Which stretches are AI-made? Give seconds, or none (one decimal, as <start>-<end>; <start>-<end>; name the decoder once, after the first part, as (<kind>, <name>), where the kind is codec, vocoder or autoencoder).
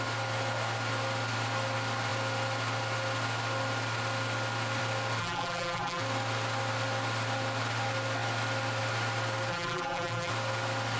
5.2-6.0 (vocoder, BigVGAN v2); 9.5-10.3